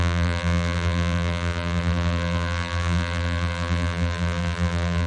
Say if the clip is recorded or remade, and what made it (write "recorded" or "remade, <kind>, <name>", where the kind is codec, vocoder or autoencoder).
remade, vocoder, BigVGAN v2